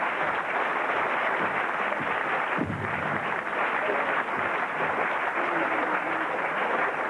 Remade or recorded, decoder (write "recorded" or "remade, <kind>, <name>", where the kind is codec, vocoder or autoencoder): recorded